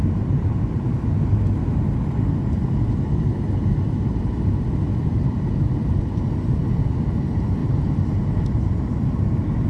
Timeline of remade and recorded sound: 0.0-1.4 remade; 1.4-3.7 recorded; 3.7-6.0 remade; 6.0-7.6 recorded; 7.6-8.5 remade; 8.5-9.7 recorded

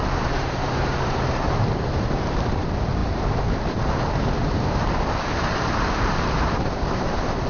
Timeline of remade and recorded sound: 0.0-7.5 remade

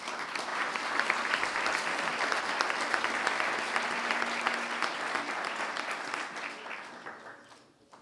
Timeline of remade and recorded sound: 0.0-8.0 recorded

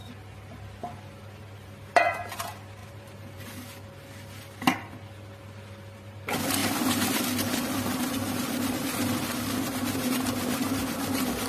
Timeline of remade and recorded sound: 0.0-2.8 recorded; 2.8-3.6 remade; 3.6-11.5 recorded

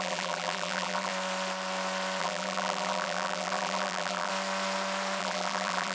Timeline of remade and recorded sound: 0.0-1.1 remade; 1.1-2.2 recorded; 2.2-4.3 remade; 4.3-5.2 recorded; 5.2-5.9 remade